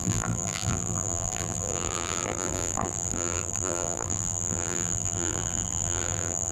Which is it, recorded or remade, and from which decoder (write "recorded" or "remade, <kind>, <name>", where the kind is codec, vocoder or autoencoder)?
remade, vocoder, BigVGAN v2